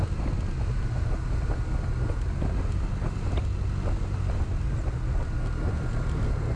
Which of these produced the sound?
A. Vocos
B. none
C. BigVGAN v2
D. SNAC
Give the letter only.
B